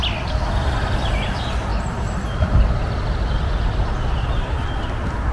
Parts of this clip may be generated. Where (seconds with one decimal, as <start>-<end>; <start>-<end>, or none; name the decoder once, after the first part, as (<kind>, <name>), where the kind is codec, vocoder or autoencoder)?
none